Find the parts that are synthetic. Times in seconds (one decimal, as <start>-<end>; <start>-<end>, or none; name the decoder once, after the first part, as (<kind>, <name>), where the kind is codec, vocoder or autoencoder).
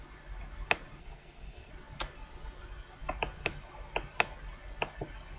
1.0-1.7 (codec, SNAC)